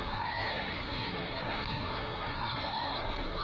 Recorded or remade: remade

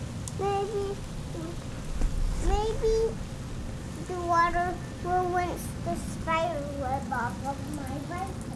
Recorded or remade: recorded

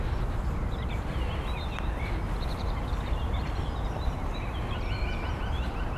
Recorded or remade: remade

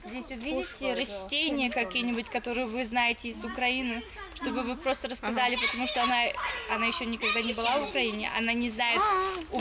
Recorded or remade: recorded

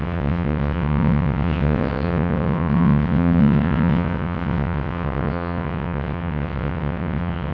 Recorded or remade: remade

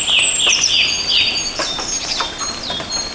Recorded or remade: recorded